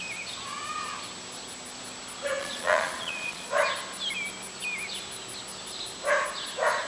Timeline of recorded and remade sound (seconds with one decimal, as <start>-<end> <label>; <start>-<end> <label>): 0.0-2.4 recorded; 2.4-3.5 remade; 3.5-6.9 recorded